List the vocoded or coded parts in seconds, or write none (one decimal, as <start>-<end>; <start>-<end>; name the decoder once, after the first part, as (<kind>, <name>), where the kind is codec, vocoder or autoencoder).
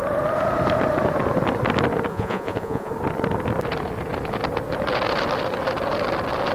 2.1-2.9 (vocoder, Vocos)